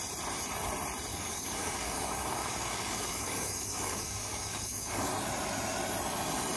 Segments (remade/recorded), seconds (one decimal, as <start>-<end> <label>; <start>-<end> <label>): 0.0-1.1 recorded; 1.1-5.1 remade; 5.1-6.6 recorded